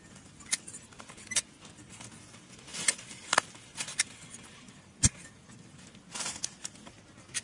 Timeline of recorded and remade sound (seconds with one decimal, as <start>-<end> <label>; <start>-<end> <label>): 0.0-7.4 recorded

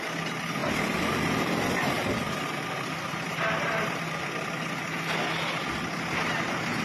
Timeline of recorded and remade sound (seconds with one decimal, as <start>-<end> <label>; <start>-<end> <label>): 0.0-6.8 recorded

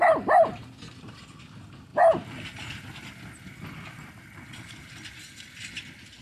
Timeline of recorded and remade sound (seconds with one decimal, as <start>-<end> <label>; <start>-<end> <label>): 0.0-6.2 recorded

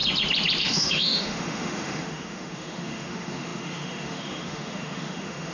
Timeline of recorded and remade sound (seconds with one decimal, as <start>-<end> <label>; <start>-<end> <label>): 0.0-0.6 recorded; 0.6-5.5 remade

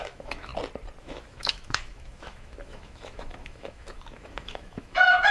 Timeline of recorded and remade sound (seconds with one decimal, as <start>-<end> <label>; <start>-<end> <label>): 0.0-0.5 remade; 0.5-1.0 recorded; 1.0-5.3 remade

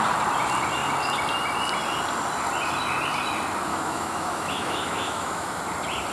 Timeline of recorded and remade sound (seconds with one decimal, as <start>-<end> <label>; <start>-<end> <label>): 0.0-3.7 recorded; 3.7-5.6 remade; 5.6-6.1 recorded

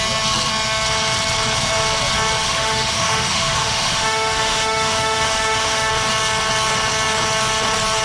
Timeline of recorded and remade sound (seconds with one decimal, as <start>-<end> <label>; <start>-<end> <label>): 0.0-2.4 recorded; 2.4-5.9 remade; 5.9-8.0 recorded